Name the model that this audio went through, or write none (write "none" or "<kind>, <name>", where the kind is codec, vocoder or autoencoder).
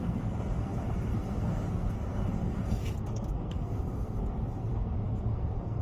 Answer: codec, SNAC